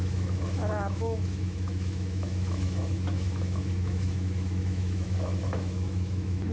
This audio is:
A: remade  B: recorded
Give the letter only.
A